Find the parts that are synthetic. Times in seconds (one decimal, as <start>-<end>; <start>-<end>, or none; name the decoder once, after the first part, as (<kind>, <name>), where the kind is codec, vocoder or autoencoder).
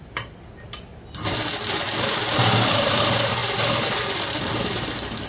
none